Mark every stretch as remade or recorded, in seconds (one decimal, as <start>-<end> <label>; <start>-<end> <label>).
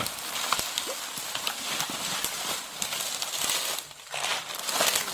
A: 0.0-5.1 remade